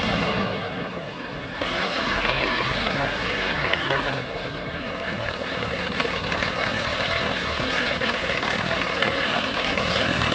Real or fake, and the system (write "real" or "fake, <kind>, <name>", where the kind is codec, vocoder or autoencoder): fake, codec, SNAC